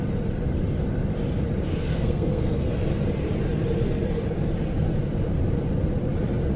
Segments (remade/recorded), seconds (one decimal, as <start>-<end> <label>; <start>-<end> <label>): 0.0-1.7 recorded; 1.7-2.7 remade; 2.7-6.6 recorded